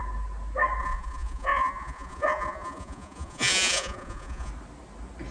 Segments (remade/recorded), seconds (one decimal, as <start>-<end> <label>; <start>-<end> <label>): 0.0-0.8 recorded; 0.8-4.5 remade; 4.5-5.3 recorded